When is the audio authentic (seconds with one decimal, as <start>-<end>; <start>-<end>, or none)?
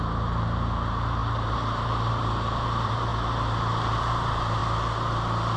3.1-4.0; 4.6-5.6